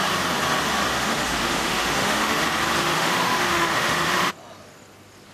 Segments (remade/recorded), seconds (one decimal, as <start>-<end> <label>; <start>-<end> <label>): 0.0-0.9 recorded; 0.9-2.4 remade; 2.4-2.8 recorded; 2.8-4.3 remade; 4.3-5.3 recorded